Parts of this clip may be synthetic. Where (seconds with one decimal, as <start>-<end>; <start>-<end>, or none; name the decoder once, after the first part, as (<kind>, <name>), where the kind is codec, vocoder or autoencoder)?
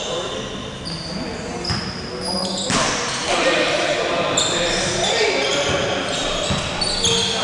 none